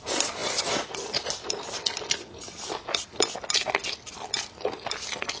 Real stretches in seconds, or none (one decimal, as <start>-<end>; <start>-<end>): 0.0-5.4